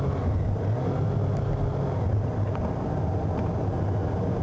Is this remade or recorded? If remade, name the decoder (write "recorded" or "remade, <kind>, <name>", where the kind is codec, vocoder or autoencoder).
recorded